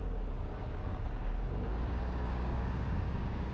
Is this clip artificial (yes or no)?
yes